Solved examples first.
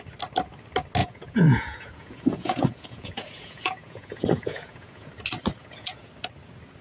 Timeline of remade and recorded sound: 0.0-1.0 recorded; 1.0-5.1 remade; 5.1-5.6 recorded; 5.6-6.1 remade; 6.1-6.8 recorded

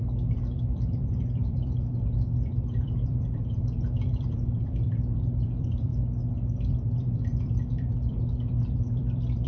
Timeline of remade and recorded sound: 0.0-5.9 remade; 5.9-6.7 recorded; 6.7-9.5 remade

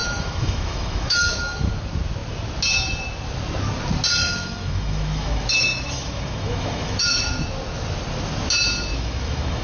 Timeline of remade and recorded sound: 0.0-1.7 remade; 1.7-4.2 recorded; 4.2-7.3 remade; 7.3-8.9 recorded; 8.9-9.6 remade

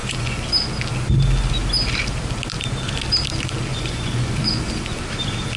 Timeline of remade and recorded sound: 0.0-0.5 remade; 0.5-3.7 recorded; 3.7-5.0 remade; 5.0-5.6 recorded